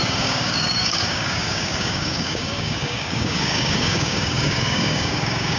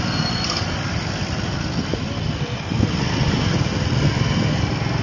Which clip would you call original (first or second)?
second